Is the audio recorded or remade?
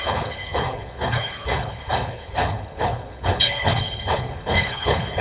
remade